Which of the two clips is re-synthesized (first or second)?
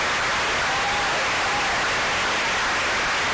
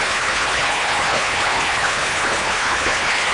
second